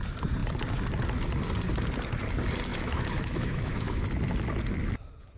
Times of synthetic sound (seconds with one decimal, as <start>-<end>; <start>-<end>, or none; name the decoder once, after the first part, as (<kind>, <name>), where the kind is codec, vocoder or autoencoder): 2.7-4.0 (autoencoder, DAC-VAE)